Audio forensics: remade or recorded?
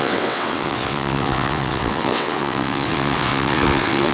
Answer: remade